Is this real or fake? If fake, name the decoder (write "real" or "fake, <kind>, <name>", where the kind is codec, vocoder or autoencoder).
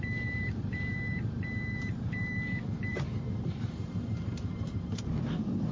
fake, vocoder, BigVGAN v2